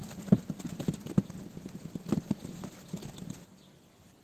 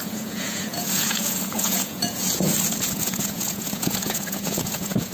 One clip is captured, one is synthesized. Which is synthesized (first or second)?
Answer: second